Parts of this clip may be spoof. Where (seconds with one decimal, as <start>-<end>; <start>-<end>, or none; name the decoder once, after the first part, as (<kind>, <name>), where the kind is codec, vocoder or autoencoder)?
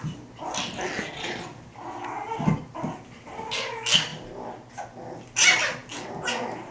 none